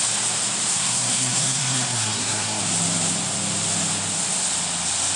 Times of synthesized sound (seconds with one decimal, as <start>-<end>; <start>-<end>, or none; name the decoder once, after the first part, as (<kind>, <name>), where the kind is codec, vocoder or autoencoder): 0.7-2.6 (codec, SNAC)